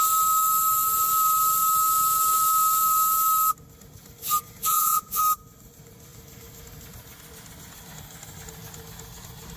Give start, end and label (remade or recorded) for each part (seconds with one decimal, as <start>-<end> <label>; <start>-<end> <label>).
0.0-4.7 recorded; 4.7-5.2 remade; 5.2-9.6 recorded